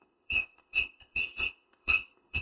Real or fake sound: fake